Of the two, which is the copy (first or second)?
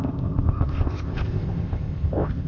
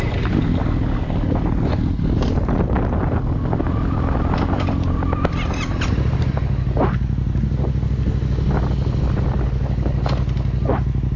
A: first